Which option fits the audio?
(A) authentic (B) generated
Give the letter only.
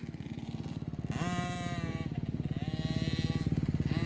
A